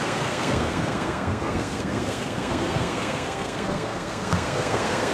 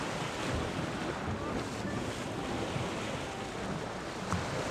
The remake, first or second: first